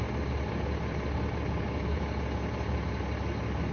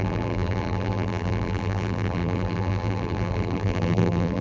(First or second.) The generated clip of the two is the second